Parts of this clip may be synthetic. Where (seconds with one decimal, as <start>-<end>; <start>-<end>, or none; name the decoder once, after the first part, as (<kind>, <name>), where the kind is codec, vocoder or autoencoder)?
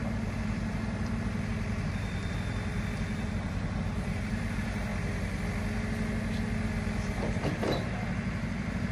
0.0-4.9 (vocoder, BigVGAN v2); 7.1-8.9